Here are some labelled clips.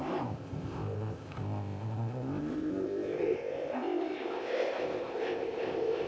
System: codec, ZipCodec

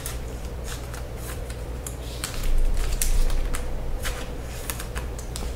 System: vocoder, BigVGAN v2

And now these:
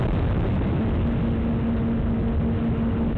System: none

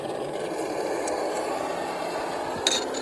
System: vocoder, BigVGAN v2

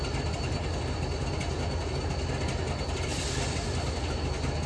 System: none